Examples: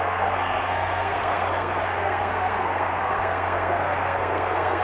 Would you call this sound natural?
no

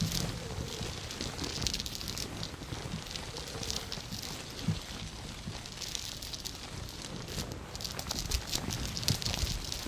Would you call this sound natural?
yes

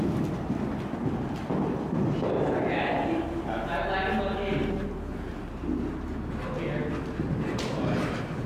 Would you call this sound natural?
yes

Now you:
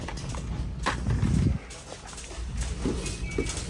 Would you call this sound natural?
yes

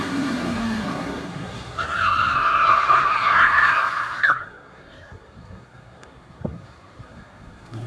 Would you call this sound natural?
no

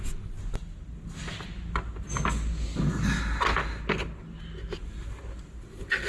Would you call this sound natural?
yes